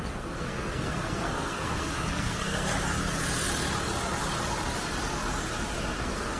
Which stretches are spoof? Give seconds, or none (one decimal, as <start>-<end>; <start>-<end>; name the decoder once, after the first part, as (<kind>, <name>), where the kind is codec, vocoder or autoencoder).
0.0-2.7 (codec, SNAC); 6.0-6.4

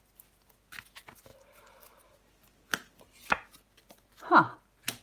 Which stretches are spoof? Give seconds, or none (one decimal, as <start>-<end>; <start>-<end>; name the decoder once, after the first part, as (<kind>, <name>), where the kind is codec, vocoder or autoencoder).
none

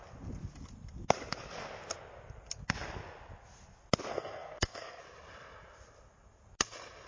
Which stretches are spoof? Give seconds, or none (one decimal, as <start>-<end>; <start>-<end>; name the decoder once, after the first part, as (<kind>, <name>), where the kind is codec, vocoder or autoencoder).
4.1-5.0 (codec, SNAC)

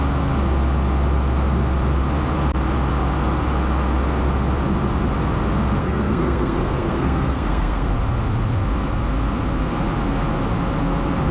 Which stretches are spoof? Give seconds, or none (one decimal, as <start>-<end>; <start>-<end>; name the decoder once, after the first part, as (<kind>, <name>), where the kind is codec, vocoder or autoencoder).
5.8-7.9 (codec, SNAC)

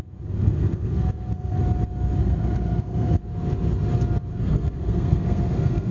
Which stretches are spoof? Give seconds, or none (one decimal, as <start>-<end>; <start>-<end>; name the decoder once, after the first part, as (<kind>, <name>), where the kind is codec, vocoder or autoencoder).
0.4-1.6 (codec, SNAC); 2.2-3.2; 4.3-5.9